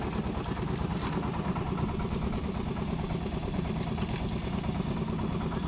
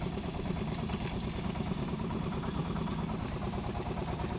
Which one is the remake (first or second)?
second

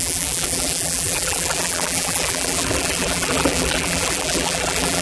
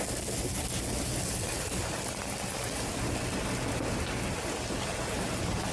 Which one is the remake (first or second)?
first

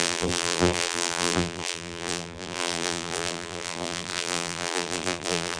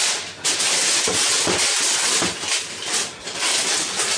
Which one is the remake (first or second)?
first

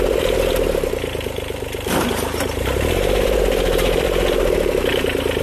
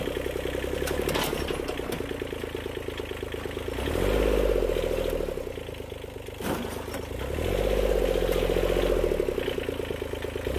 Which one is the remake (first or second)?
first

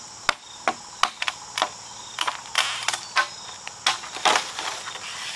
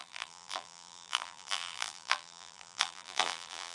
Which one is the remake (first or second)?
second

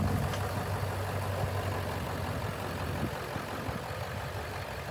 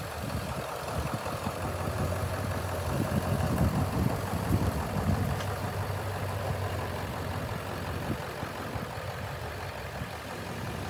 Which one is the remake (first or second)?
second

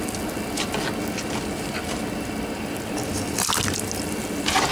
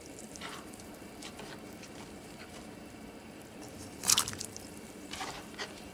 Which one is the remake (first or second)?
second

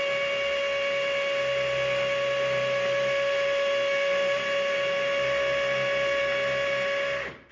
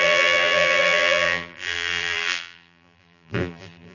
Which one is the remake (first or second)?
second